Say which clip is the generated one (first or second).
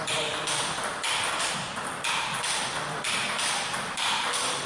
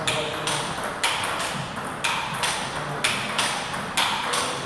first